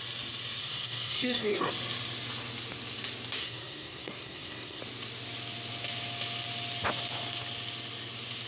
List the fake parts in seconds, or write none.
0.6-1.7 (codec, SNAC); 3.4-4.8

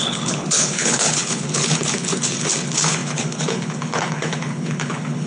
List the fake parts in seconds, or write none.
0.0-5.3 (codec, HILCodec)

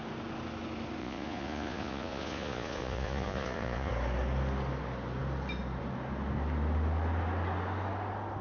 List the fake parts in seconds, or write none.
1.0-3.9 (vocoder, Vocos)